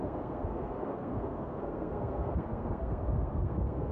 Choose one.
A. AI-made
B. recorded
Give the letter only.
A